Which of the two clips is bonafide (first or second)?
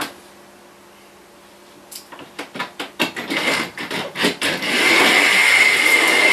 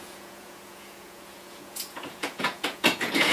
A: first